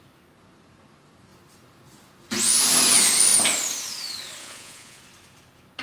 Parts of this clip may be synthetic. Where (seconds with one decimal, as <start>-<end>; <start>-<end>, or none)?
4.4-5.0